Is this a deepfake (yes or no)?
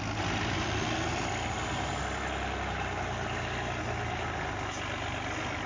no